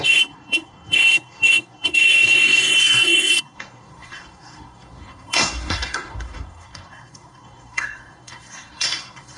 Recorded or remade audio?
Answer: remade